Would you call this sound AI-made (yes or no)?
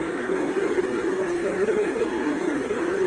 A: yes